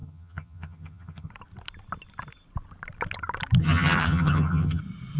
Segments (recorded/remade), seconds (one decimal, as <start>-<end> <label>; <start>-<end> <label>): 0.0-1.3 remade; 1.3-3.6 recorded; 3.6-4.8 remade; 4.8-5.2 recorded